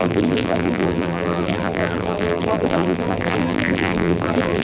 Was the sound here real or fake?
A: fake